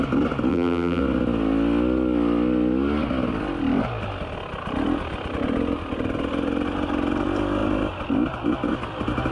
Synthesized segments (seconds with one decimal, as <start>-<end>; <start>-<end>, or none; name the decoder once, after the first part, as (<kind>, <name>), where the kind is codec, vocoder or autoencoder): 0.5-1.0 (vocoder, BigVGAN v2)